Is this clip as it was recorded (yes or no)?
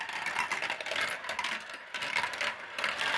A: yes